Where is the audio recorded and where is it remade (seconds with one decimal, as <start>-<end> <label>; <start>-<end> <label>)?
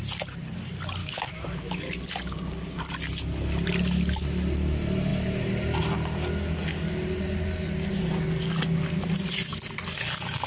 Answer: 0.0-1.0 recorded; 1.0-1.9 remade; 1.9-10.5 recorded